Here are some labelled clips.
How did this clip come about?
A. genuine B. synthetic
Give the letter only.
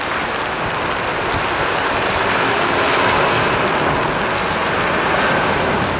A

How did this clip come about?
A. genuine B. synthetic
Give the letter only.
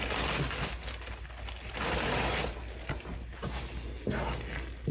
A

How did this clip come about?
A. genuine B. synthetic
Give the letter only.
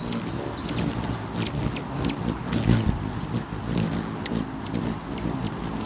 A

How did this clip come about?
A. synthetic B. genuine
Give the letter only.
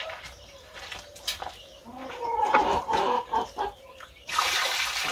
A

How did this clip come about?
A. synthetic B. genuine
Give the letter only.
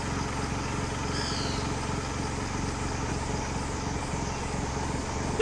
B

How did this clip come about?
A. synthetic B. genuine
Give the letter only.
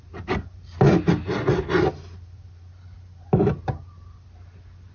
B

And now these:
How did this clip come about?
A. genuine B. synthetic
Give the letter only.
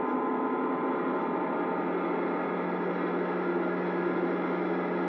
A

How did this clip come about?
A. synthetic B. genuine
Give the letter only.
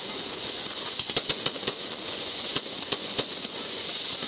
A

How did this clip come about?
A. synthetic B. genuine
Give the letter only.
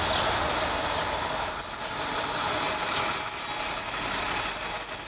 B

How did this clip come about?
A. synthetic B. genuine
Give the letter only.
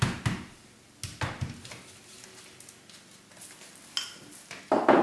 B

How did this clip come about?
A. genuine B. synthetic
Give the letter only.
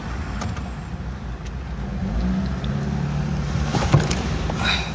A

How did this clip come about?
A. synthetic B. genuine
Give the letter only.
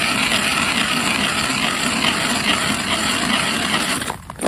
B